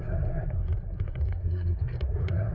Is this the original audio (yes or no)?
no